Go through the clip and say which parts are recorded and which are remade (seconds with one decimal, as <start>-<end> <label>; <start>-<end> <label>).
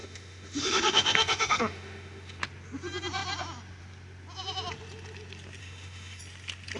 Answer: 0.0-2.4 remade; 2.4-5.6 recorded; 5.6-6.2 remade; 6.2-6.8 recorded